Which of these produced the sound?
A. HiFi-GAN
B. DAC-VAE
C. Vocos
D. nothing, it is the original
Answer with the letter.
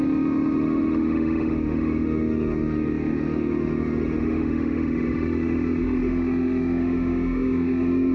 B